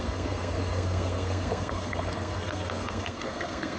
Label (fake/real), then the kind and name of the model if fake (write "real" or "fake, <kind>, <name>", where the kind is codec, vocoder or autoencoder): fake, codec, SNAC